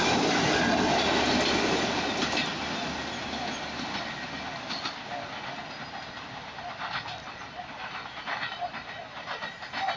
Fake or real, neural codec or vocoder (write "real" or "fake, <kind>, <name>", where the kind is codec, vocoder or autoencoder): real